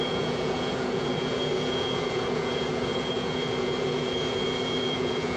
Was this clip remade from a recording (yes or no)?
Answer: yes